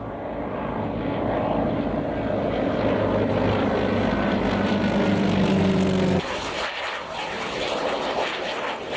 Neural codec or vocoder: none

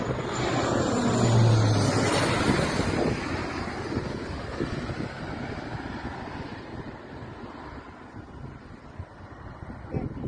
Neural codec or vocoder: none